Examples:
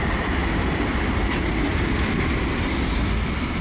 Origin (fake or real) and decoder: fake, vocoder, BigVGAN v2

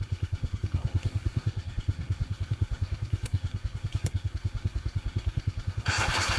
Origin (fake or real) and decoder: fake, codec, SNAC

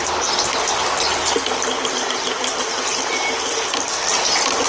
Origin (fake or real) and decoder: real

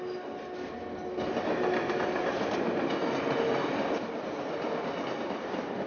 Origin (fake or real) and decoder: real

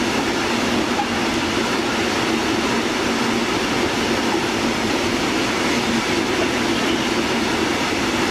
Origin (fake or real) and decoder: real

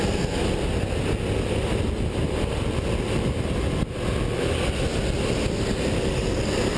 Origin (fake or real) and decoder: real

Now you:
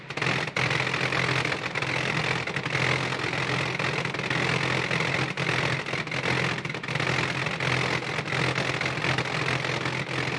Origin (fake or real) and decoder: real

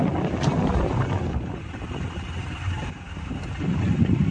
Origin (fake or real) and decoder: real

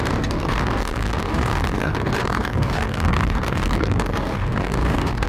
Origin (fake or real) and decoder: fake, codec, DAC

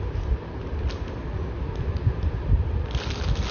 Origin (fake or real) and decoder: real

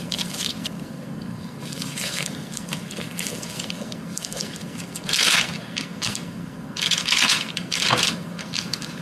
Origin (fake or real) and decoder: fake, codec, SNAC